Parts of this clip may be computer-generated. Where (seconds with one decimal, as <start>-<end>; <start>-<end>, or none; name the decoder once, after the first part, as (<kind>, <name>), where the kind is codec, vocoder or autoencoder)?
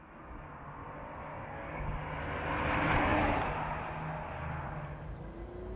1.3-2.0 (codec, DAC)